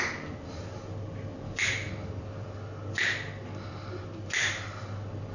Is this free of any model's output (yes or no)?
yes